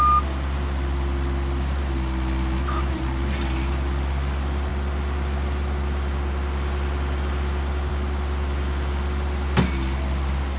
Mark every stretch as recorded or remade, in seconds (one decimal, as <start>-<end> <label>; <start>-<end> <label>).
0.0-10.6 recorded

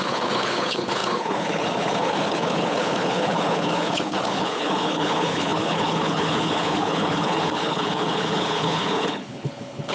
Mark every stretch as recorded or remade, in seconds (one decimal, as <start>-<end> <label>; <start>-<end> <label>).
0.0-9.9 remade

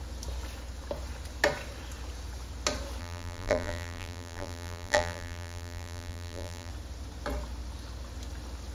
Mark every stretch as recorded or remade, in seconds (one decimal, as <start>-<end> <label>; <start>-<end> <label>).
0.0-3.0 recorded; 3.0-6.7 remade; 6.7-8.7 recorded